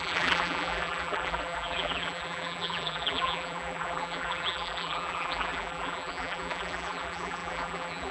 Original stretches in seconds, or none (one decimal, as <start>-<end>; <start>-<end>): none